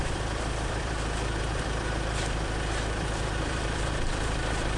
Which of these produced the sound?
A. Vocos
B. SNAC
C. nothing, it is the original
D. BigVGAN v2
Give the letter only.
D